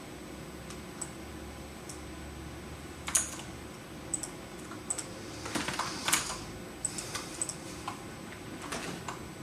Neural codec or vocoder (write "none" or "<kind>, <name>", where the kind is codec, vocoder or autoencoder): none